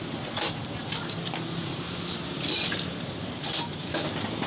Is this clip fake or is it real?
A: fake